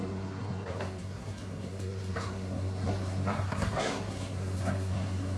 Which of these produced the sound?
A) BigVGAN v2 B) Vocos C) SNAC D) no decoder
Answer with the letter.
C